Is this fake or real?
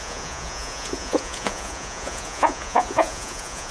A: fake